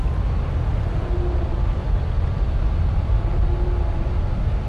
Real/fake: real